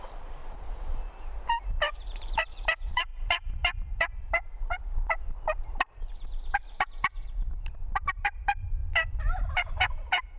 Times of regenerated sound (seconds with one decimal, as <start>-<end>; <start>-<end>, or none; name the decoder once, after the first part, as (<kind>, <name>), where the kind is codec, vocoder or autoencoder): 0.0-0.4 (vocoder, BigVGAN v2); 2.1-10.4